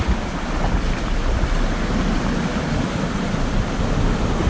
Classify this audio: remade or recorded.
recorded